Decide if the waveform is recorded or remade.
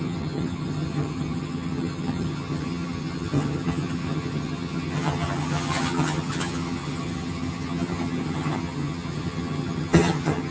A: remade